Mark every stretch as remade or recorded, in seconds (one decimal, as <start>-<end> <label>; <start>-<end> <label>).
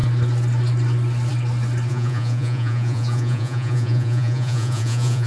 0.0-1.9 recorded; 1.9-5.3 remade